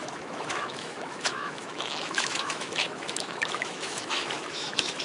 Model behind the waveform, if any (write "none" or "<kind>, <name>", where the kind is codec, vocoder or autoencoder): autoencoder, DAC-VAE